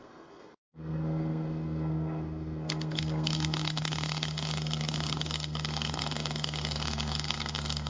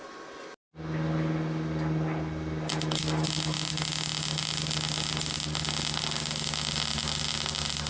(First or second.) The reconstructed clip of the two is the first